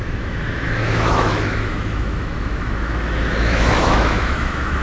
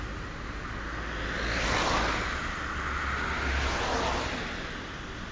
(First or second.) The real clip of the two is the second